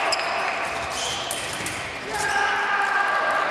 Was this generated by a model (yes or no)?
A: no